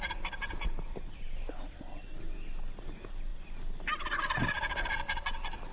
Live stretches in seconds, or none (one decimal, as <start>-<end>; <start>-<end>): 0.0-5.7